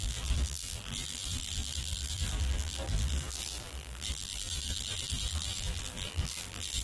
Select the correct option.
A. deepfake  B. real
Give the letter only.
A